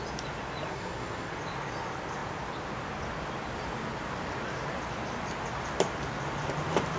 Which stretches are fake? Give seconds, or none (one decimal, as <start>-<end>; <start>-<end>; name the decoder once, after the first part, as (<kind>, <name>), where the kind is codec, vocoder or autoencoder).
0.7-1.3 (codec, SNAC)